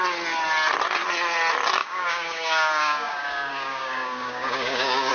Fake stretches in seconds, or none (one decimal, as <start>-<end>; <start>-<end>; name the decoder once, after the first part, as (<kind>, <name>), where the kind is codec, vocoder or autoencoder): 1.8-5.1 (codec, DAC)